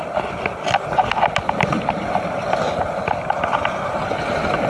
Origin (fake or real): real